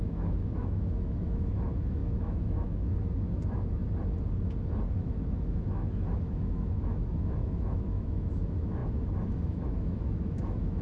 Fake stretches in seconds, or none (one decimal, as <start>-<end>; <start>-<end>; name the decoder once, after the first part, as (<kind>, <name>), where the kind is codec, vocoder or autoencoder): 0.0-3.8 (autoencoder, DAC-VAE); 4.9-10.8